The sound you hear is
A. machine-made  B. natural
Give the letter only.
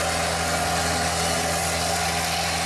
B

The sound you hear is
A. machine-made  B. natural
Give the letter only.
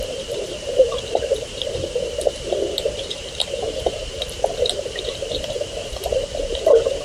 A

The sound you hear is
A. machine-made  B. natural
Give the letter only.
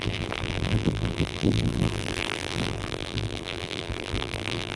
A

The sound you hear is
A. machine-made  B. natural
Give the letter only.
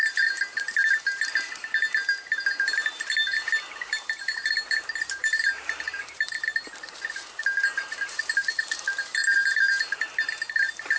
A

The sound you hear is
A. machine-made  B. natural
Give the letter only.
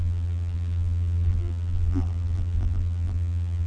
A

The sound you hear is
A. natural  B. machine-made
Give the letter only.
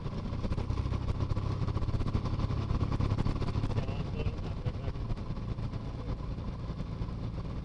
A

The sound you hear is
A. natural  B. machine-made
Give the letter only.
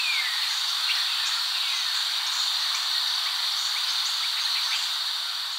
B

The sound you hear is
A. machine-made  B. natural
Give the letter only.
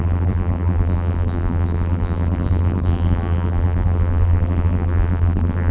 A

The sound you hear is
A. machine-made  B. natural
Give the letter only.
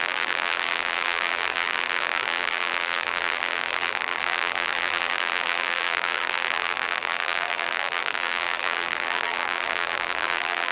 A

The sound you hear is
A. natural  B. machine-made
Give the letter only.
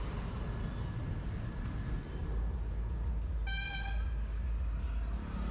A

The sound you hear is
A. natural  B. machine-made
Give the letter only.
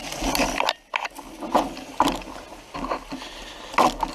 A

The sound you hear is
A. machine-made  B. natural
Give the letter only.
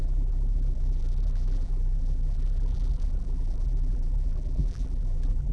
A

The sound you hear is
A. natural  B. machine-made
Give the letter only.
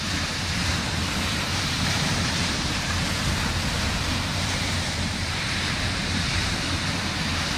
B